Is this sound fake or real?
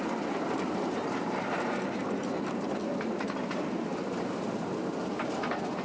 real